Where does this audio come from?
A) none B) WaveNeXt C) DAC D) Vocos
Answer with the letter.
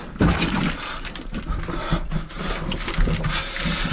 A